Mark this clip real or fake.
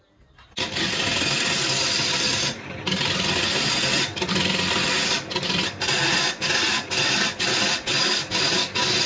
real